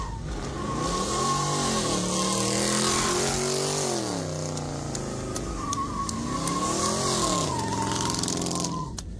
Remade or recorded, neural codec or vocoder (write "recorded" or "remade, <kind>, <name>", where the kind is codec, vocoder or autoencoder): recorded